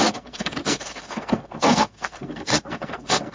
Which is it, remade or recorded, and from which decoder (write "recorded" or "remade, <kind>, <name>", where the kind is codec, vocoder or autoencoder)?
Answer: remade, codec, SNAC